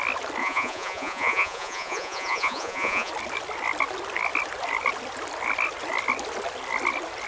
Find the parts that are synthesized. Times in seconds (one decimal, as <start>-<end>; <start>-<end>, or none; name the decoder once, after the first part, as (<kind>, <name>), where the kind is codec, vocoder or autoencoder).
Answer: 0.4-3.1 (vocoder, Vocos)